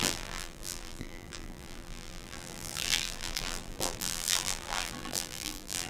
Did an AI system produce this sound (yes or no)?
yes